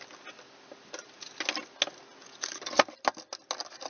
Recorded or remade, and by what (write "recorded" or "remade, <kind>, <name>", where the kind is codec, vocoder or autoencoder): recorded